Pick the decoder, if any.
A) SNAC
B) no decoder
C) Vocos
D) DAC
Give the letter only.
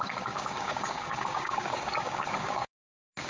D